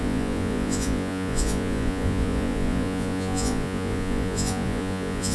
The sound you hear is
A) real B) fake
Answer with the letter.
B